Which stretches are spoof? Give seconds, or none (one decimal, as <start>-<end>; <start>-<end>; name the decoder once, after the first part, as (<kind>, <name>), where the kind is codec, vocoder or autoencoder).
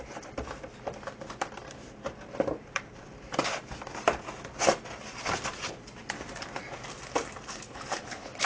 7.5-8.5 (codec, HILCodec)